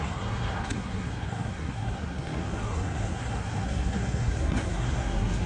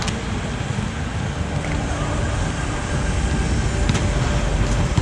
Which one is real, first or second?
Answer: second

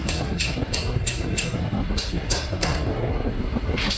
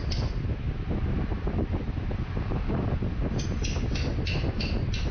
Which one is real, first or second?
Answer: second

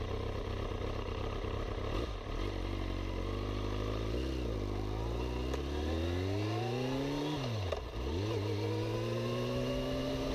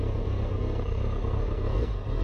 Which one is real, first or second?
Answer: first